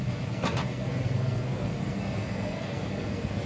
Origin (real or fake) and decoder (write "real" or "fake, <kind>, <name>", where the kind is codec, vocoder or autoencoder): fake, codec, SNAC